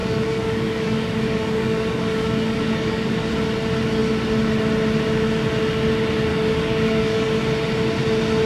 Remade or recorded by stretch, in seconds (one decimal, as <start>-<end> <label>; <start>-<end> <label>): 0.0-3.3 remade; 3.3-6.3 recorded; 6.3-7.4 remade; 7.4-8.5 recorded